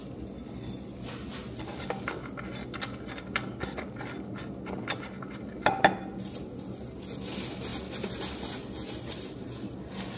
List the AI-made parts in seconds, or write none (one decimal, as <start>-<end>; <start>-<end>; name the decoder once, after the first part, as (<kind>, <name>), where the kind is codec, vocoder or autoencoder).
7.7-8.2 (vocoder, BigVGAN v2); 8.8-9.4